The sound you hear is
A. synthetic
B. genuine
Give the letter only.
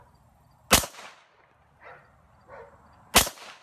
B